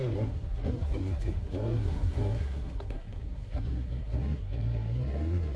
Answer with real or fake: fake